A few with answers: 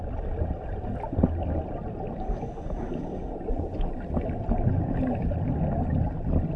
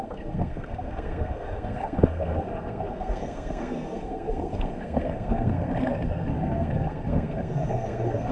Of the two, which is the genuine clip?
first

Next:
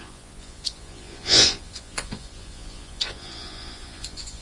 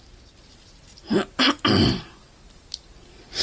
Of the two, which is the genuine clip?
second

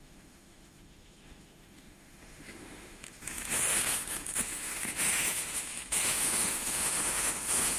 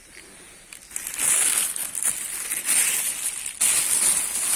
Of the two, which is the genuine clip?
second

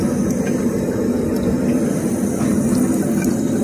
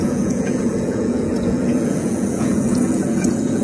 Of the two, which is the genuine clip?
first